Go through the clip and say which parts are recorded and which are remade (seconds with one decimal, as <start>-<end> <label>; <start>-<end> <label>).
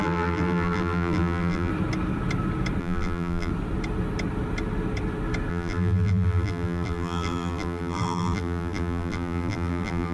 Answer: 0.0-1.7 remade; 1.7-2.8 recorded; 2.8-3.5 remade; 3.5-5.5 recorded; 5.5-10.1 remade